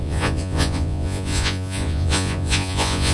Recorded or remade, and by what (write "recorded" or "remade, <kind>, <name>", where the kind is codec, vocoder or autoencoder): remade, vocoder, Vocos